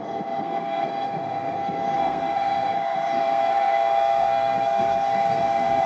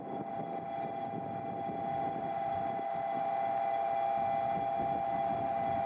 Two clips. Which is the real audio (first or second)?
second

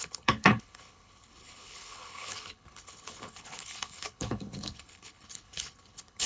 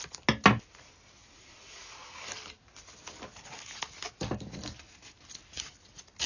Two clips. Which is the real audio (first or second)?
second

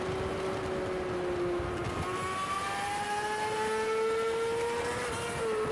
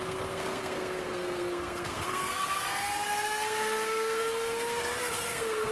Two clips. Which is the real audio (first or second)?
first